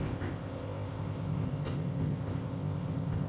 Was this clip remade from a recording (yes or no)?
yes